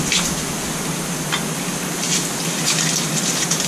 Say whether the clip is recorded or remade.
recorded